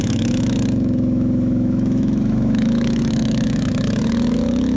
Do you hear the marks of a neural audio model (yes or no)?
yes